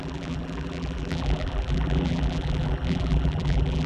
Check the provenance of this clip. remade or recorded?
remade